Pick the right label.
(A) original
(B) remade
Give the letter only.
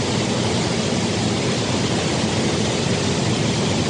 A